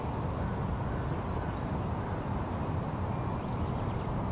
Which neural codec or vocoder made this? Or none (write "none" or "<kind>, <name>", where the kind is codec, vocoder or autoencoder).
none